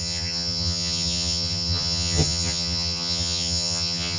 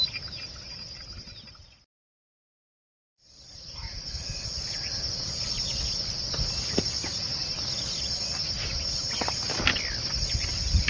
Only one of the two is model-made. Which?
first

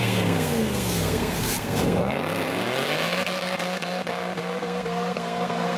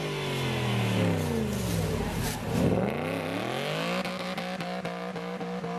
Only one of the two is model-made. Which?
first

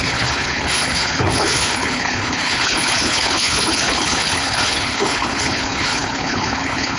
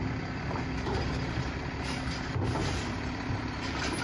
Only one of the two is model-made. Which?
first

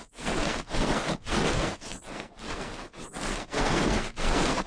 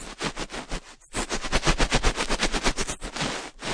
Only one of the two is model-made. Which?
first